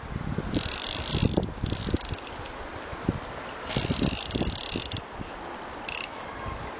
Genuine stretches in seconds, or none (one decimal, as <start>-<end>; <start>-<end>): 0.0-6.8